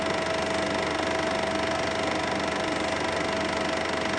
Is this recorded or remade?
recorded